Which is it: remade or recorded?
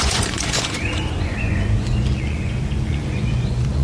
remade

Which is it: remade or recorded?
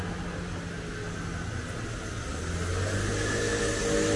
recorded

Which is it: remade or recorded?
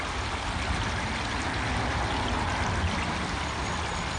recorded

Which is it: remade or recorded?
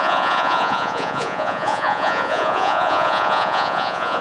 remade